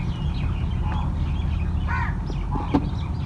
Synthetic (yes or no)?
no